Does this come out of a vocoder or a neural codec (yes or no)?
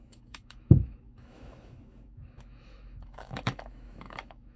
yes